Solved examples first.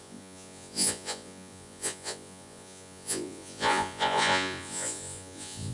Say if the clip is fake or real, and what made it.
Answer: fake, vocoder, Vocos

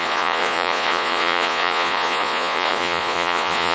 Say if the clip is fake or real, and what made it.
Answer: fake, vocoder, Vocos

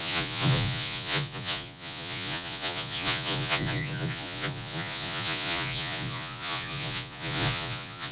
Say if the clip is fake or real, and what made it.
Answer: fake, vocoder, Vocos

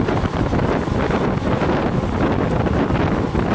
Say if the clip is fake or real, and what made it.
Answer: real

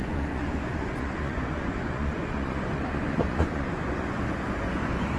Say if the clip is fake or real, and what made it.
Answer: fake, vocoder, Vocos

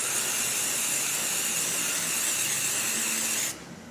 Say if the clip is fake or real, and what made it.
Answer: real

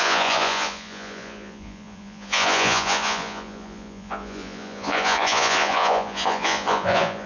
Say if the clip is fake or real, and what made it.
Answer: fake, vocoder, Vocos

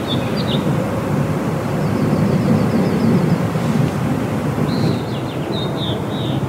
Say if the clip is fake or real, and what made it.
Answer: real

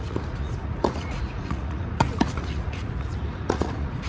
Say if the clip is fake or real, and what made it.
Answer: fake, vocoder, Vocos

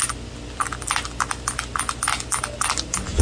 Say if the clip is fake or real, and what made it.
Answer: real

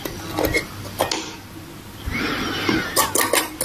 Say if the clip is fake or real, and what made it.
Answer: real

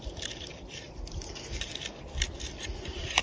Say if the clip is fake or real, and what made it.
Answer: real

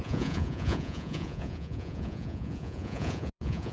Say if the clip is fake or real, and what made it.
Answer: fake, vocoder, Vocos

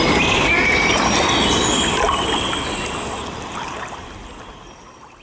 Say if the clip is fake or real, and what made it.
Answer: real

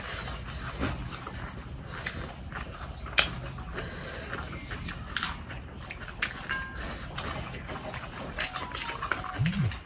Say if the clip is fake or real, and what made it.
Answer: real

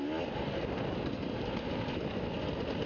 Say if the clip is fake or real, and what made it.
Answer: real